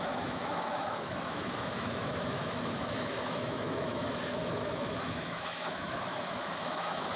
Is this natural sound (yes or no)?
no